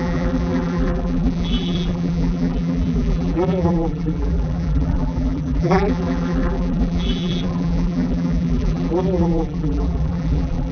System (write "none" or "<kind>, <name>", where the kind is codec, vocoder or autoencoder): vocoder, BigVGAN v2